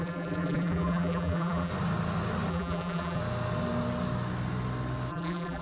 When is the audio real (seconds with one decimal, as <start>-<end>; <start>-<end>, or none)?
1.7-2.5; 3.2-5.1